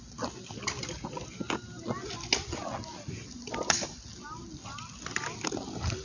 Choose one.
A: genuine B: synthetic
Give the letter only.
A